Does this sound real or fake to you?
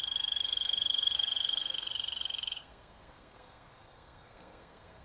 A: fake